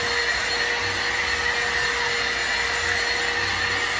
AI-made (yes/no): no